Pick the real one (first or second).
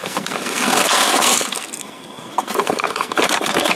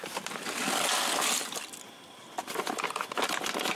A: second